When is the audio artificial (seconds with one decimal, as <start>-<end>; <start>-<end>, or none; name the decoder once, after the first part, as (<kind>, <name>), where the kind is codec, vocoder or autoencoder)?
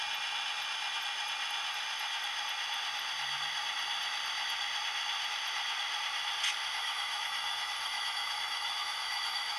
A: 6.8-9.6 (autoencoder, DAC-VAE)